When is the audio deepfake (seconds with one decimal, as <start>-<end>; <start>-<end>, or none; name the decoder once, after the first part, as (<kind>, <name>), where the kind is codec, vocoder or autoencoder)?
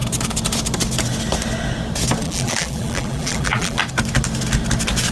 2.2-3.8 (vocoder, BigVGAN v2)